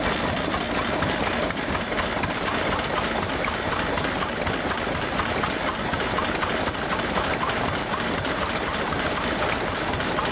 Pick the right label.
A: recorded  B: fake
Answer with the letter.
A